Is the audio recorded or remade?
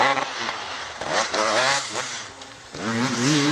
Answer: remade